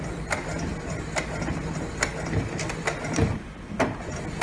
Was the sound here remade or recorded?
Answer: recorded